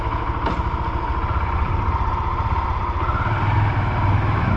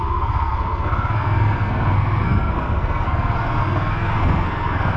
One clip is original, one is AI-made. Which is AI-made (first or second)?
second